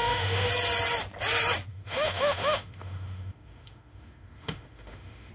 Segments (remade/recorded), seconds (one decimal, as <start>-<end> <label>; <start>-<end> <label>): 0.0-0.5 remade; 0.5-1.7 recorded; 1.7-5.3 remade